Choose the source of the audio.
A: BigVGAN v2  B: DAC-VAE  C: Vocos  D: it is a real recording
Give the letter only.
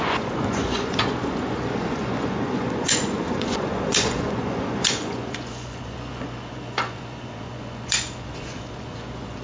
C